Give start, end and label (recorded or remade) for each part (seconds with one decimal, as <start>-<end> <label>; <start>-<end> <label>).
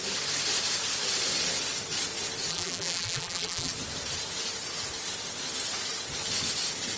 0.0-2.5 recorded; 2.5-3.7 remade; 3.7-7.0 recorded